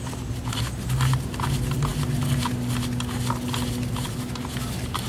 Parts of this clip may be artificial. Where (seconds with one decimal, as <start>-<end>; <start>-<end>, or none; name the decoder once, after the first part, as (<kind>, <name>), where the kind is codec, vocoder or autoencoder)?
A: none